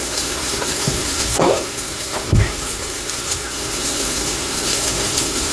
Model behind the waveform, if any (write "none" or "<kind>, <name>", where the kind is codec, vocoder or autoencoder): codec, SNAC